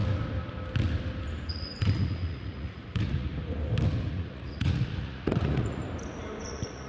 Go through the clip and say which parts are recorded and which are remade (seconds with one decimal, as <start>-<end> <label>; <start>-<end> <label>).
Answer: 0.0-1.5 recorded; 1.5-3.3 remade; 3.3-4.1 recorded; 4.1-5.8 remade; 5.8-6.4 recorded; 6.4-6.9 remade